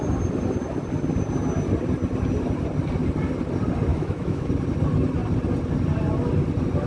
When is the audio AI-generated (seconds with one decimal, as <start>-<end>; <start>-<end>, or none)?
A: 3.9-4.5

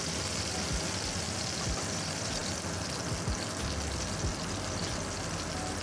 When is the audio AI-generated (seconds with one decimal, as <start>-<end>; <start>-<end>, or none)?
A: none

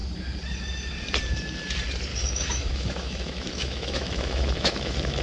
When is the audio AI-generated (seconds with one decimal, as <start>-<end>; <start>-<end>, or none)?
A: 2.1-5.2

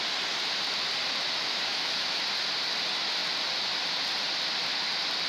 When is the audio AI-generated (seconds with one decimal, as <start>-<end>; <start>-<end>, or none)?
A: 1.4-2.2

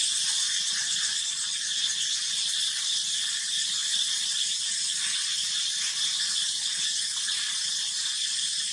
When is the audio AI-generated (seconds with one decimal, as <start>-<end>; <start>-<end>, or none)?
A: none

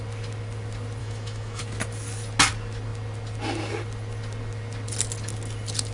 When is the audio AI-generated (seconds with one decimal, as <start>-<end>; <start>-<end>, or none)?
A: 1.0-1.6

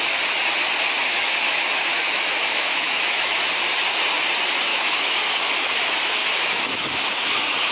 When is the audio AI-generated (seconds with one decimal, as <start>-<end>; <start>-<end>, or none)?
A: 1.0-3.4; 4.7-5.5; 6.2-7.7

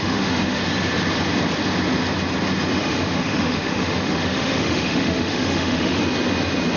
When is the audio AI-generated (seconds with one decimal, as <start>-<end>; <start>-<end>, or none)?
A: 0.0-0.6; 2.7-6.0